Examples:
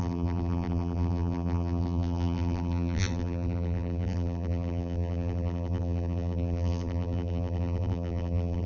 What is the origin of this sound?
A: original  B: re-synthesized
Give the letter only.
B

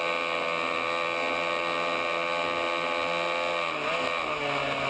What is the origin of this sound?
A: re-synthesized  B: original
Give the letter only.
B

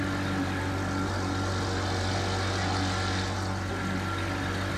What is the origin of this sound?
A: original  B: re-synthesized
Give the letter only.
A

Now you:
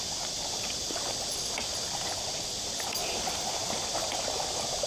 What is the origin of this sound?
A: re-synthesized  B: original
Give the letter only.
B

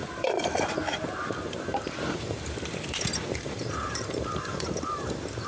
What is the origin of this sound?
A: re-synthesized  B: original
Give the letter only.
A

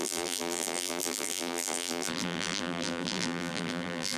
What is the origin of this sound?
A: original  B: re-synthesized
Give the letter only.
B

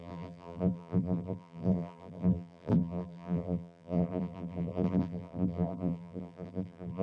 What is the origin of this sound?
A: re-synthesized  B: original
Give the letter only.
A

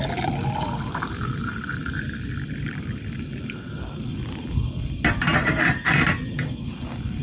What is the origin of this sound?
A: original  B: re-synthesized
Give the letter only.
A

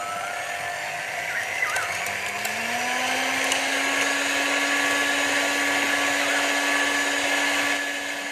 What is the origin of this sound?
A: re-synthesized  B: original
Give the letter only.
B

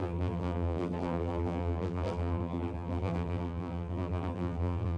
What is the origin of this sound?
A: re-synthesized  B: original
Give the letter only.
A